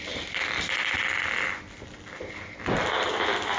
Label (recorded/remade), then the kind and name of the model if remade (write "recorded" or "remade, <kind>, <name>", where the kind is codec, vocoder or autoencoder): recorded